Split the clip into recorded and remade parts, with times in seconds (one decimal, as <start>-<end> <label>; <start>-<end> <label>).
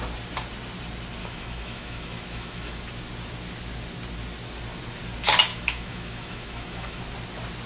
0.0-1.2 recorded; 1.2-2.8 remade; 2.8-5.5 recorded; 5.5-7.0 remade; 7.0-7.7 recorded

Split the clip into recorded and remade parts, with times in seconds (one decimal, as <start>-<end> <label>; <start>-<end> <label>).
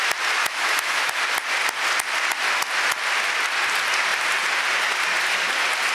0.0-0.4 recorded; 0.4-1.2 remade; 1.2-5.9 recorded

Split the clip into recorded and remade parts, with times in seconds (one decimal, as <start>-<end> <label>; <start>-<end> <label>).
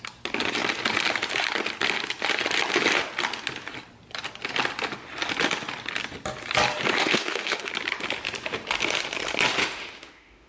0.0-7.0 recorded; 7.0-7.7 remade; 7.7-9.6 recorded; 9.6-10.5 remade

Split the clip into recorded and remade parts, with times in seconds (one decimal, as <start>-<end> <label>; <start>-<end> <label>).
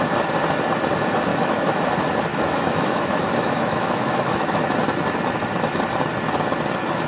0.0-1.3 recorded; 1.3-1.9 remade; 1.9-2.3 recorded; 2.3-4.7 remade; 4.7-7.1 recorded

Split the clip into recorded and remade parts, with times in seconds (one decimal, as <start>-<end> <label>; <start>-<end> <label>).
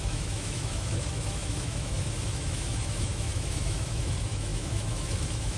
0.0-5.6 remade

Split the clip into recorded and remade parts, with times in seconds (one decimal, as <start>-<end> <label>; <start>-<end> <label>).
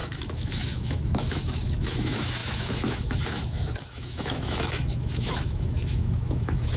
0.0-6.8 remade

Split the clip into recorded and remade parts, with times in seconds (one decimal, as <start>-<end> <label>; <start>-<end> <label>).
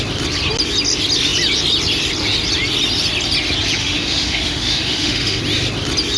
0.0-3.8 recorded; 3.8-5.4 remade; 5.4-6.2 recorded